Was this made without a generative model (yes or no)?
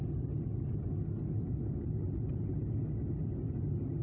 yes